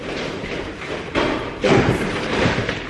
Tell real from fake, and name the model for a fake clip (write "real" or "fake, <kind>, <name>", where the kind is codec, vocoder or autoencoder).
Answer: fake, vocoder, BigVGAN v2